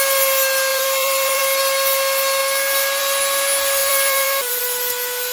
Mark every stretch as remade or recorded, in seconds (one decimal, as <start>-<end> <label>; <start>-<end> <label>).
0.0-0.7 recorded; 0.7-1.4 remade; 1.4-3.8 recorded; 3.8-4.6 remade; 4.6-5.3 recorded